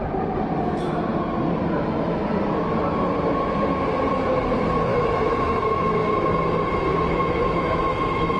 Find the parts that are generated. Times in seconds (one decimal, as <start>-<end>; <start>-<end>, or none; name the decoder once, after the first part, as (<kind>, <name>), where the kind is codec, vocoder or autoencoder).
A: 4.9-6.3 (autoencoder, DAC-VAE); 6.9-8.4